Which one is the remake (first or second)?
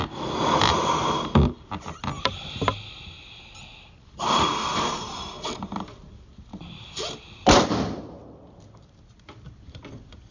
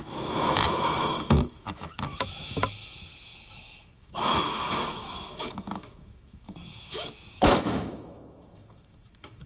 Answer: second